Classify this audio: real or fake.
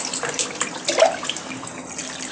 real